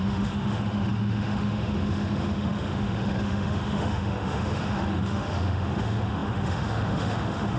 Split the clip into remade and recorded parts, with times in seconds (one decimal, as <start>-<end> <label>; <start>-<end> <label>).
0.0-7.6 remade